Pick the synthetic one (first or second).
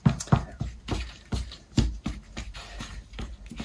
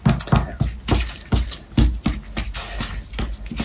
first